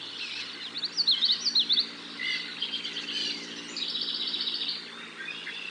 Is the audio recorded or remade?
recorded